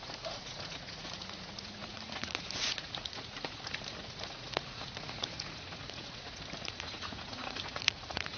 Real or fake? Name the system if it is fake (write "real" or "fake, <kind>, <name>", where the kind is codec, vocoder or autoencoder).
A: fake, vocoder, Vocos